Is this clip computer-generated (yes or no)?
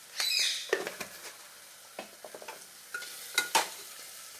no